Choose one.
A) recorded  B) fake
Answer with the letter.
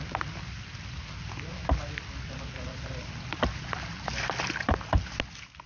A